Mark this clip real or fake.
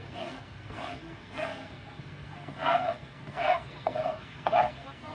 fake